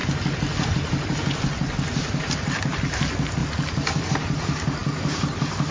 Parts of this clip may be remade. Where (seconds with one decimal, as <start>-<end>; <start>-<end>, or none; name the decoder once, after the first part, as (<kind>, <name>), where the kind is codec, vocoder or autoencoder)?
none

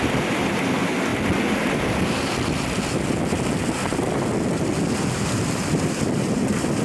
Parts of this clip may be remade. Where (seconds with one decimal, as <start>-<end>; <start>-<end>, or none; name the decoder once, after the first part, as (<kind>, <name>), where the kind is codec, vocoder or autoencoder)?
0.0-1.1 (vocoder, BigVGAN v2); 5.2-6.8

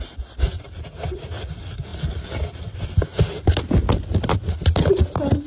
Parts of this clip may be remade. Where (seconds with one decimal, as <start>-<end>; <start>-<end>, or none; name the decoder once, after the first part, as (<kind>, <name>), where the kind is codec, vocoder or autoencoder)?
none

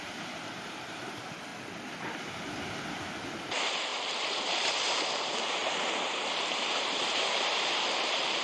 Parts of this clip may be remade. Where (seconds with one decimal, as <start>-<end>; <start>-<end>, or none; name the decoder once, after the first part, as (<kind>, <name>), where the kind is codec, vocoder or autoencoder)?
0.0-1.5 (vocoder, BigVGAN v2); 2.3-5.6; 6.3-8.4

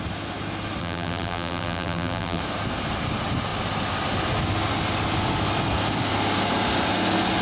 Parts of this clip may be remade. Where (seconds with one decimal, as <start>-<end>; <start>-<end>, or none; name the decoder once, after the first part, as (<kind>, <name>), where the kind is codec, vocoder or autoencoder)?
0.8-2.4 (vocoder, BigVGAN v2)

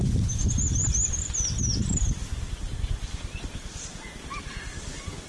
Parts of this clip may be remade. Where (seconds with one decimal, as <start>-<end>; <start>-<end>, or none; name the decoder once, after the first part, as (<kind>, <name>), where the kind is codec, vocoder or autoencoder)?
none

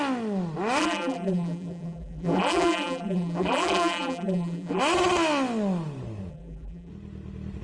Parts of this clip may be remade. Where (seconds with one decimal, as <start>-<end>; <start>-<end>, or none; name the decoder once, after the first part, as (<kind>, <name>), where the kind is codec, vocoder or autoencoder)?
0.8-4.8 (vocoder, BigVGAN v2); 6.3-6.9

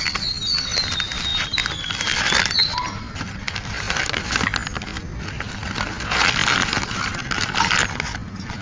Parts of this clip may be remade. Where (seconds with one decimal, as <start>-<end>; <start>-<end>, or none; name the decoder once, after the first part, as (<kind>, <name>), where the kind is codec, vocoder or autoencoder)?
1.3-4.0 (vocoder, BigVGAN v2); 4.9-5.9